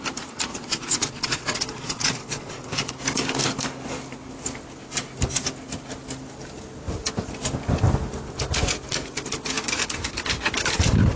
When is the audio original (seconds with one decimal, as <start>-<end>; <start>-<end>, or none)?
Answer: 0.0-0.5; 2.9-11.2